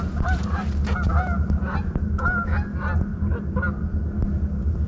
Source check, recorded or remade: recorded